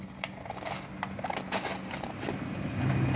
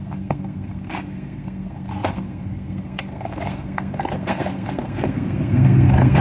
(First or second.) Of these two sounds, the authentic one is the first